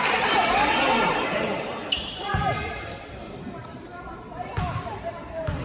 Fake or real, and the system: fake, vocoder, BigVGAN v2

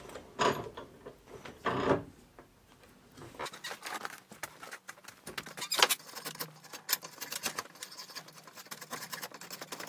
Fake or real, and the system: real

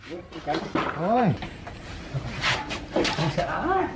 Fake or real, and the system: fake, vocoder, BigVGAN v2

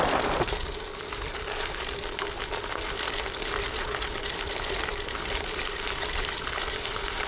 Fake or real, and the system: fake, vocoder, BigVGAN v2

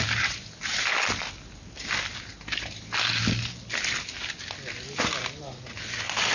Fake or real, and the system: real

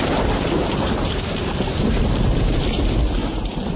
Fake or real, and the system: fake, vocoder, BigVGAN v2